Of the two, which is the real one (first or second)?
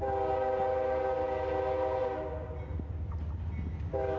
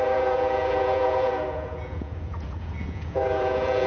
first